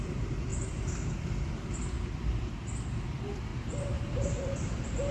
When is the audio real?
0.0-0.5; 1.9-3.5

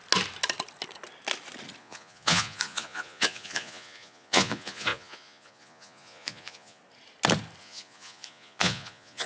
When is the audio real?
0.0-1.8; 6.8-7.6